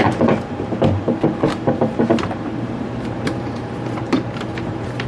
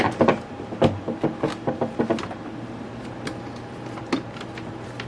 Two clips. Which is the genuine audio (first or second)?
second